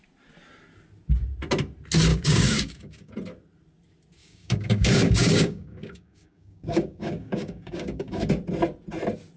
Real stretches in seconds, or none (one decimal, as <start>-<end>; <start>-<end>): 0.0-2.1; 3.1-4.2; 8.3-9.4